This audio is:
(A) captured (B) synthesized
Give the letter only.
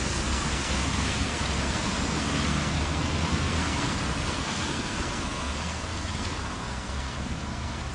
B